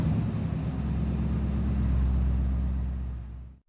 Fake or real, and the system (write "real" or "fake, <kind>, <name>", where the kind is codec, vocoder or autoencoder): real